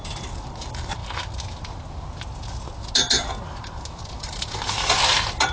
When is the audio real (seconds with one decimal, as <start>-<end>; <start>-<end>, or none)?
0.0-5.5